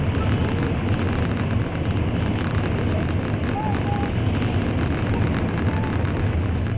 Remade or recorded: recorded